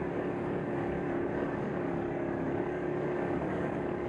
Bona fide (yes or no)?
no